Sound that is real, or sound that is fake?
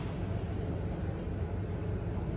real